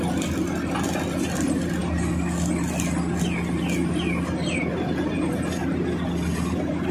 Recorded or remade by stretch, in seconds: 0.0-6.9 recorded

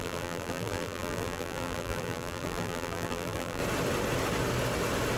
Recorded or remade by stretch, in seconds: 0.0-3.6 remade; 3.6-5.2 recorded

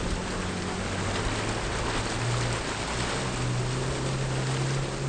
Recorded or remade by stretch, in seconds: 0.0-5.1 recorded